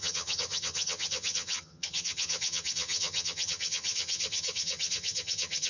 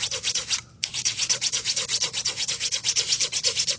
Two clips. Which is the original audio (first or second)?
second